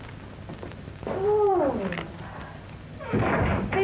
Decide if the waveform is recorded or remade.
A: recorded